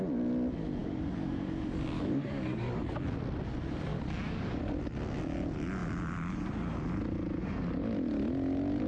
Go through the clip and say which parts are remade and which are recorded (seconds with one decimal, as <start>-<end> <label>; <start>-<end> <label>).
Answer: 0.0-0.8 recorded; 0.8-2.8 remade; 2.8-3.9 recorded; 3.9-4.6 remade; 4.6-8.9 recorded